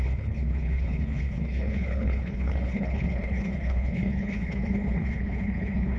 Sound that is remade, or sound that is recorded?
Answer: remade